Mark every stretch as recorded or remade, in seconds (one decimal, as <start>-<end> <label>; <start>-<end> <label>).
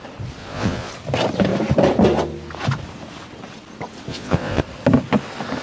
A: 0.0-0.4 recorded; 0.4-0.9 remade; 0.9-4.1 recorded; 4.1-4.6 remade; 4.6-5.6 recorded